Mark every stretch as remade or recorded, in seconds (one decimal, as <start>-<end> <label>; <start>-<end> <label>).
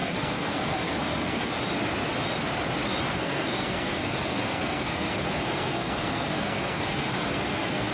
0.0-1.5 remade; 1.5-3.1 recorded; 3.1-7.9 remade